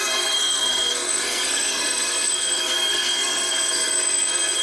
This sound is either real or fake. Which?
fake